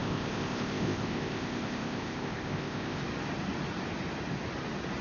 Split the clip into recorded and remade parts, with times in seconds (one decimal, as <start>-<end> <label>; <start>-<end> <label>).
0.0-3.0 remade; 3.0-5.0 recorded